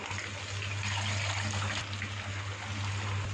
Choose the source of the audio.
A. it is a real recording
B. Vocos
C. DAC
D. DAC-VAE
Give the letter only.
A